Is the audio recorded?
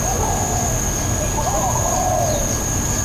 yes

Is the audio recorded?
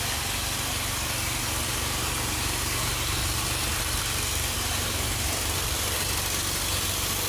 yes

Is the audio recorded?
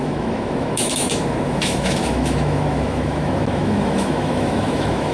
no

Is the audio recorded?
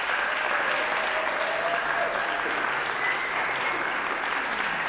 yes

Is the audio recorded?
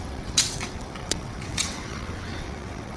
no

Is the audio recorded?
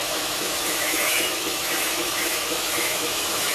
no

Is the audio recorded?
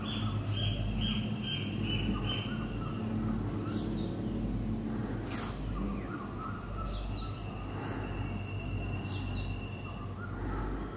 yes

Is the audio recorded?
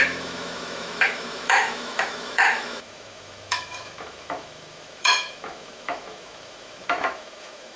no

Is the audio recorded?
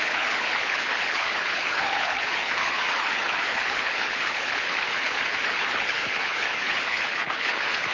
no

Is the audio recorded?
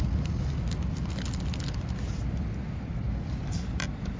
yes